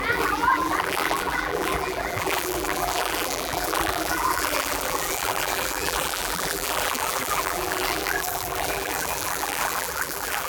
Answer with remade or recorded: remade